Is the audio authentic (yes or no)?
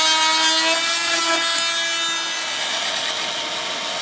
yes